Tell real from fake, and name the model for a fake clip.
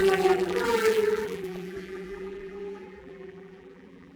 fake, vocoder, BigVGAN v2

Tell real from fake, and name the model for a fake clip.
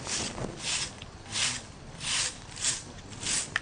real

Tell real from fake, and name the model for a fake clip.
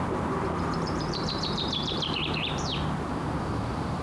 fake, vocoder, BigVGAN v2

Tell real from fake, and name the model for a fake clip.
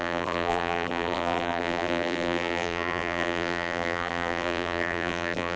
fake, vocoder, BigVGAN v2